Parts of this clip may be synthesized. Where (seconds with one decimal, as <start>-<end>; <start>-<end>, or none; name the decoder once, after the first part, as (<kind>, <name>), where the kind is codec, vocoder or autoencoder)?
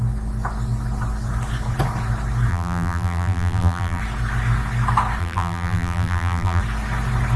2.5-4.0 (vocoder, BigVGAN v2); 5.2-6.6